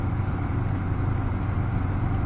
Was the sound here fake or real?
real